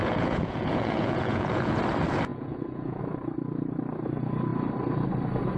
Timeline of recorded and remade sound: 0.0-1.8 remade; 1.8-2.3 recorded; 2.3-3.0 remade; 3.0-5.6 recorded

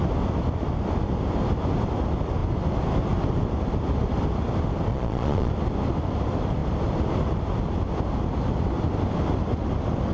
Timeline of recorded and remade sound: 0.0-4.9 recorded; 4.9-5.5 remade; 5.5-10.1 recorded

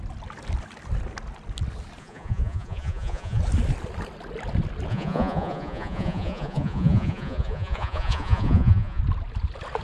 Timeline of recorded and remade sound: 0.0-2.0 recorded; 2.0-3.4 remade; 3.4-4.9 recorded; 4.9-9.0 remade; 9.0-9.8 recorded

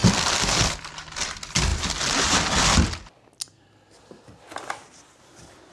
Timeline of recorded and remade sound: 0.0-5.7 recorded